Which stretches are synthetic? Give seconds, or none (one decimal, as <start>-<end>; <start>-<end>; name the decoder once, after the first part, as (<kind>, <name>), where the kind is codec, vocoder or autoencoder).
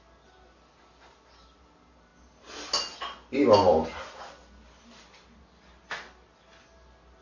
none